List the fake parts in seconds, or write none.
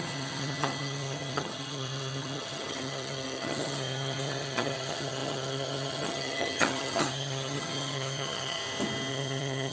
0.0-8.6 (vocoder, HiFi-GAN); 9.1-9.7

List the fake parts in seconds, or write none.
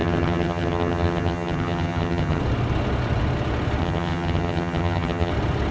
0.0-2.4 (vocoder, HiFi-GAN); 3.8-5.3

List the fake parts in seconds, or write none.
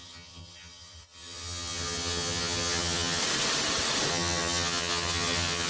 0.0-3.2 (vocoder, HiFi-GAN); 4.1-5.7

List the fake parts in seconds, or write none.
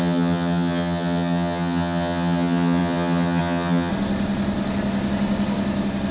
0.0-3.9 (vocoder, HiFi-GAN)